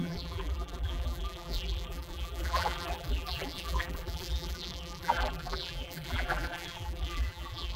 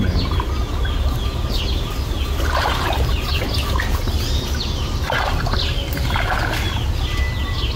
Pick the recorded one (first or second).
second